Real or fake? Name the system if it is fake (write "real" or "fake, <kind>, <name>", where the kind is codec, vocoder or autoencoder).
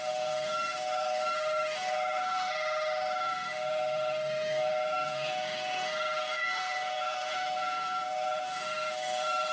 fake, autoencoder, DAC-VAE